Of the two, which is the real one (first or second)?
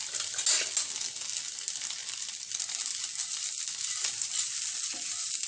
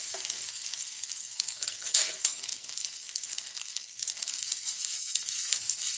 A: first